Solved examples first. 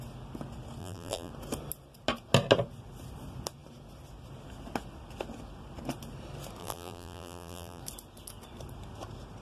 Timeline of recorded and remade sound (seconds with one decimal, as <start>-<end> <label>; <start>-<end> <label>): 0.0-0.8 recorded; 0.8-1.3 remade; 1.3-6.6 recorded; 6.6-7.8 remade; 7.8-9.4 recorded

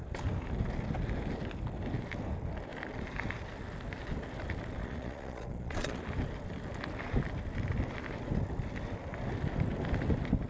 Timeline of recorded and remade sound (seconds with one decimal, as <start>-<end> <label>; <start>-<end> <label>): 0.0-4.8 recorded; 4.8-6.0 remade; 6.0-10.5 recorded

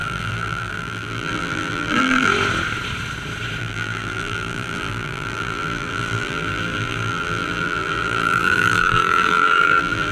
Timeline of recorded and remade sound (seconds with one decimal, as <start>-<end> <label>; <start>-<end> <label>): 0.0-2.3 remade; 2.3-3.6 recorded; 3.6-10.1 remade

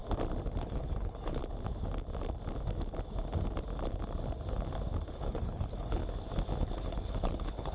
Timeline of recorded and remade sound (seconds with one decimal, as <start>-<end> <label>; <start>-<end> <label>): 0.0-0.6 recorded; 0.6-1.4 remade; 1.4-5.1 recorded; 5.1-6.0 remade; 6.0-6.6 recorded; 6.6-7.7 remade

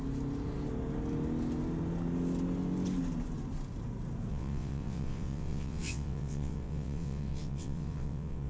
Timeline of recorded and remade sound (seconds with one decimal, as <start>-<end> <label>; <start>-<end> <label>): 0.0-4.3 recorded; 4.3-8.5 remade

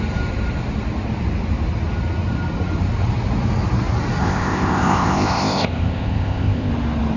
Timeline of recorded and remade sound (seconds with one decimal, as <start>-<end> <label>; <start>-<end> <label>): 0.0-4.2 recorded; 4.2-6.7 remade; 6.7-7.2 recorded